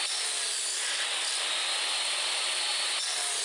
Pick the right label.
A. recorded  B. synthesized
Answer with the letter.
A